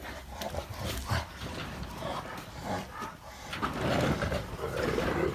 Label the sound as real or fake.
fake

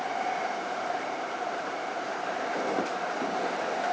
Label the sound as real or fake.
fake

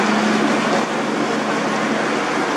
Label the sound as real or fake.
real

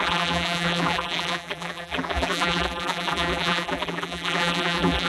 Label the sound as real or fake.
fake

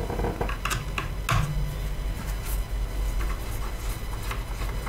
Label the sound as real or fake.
real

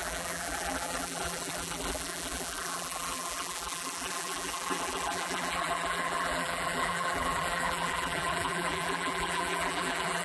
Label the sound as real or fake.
fake